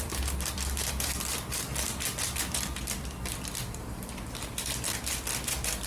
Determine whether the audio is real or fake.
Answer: fake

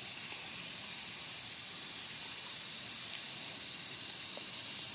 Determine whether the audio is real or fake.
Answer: fake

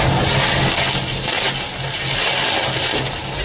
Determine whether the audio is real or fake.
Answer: real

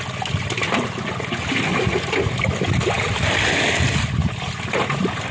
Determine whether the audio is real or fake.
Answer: real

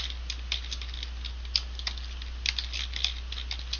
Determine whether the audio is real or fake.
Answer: real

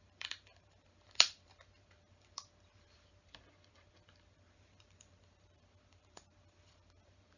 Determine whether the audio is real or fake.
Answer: fake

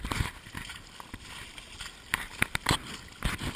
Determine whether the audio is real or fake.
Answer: real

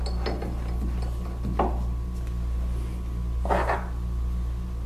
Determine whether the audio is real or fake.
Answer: real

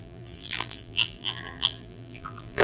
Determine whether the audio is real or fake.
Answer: fake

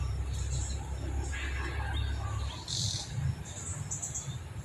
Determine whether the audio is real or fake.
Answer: real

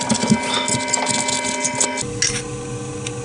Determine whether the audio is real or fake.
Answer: real